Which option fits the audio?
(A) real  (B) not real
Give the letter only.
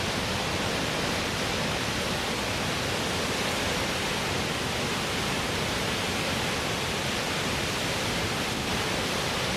A